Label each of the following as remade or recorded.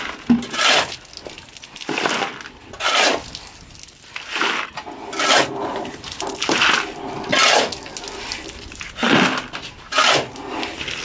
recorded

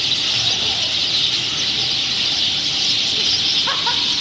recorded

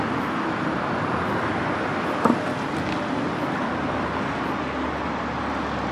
recorded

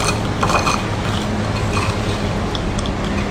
recorded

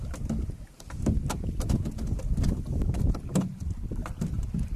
recorded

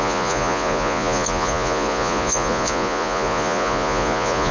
remade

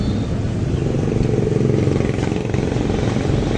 recorded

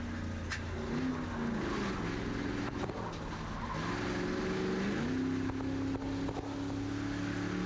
recorded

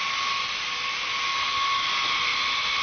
recorded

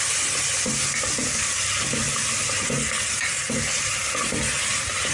recorded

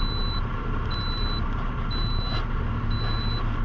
recorded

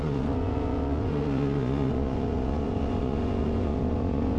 remade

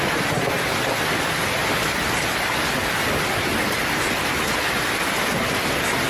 recorded